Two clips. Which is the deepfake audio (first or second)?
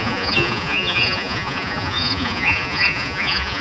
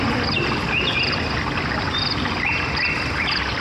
first